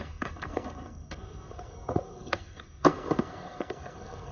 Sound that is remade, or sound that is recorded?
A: remade